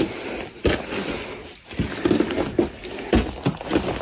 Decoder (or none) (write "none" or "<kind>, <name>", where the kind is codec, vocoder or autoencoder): none